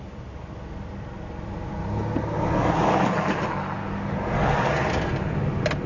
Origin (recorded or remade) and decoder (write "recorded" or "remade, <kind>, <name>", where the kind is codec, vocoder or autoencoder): recorded